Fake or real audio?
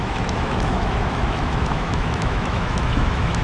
fake